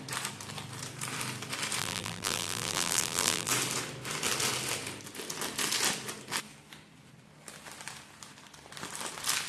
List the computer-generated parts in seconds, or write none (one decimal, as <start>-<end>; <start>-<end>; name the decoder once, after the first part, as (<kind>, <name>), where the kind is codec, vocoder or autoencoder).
1.8-3.5 (vocoder, BigVGAN v2)